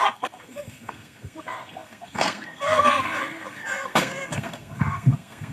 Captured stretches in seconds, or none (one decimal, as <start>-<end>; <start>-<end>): none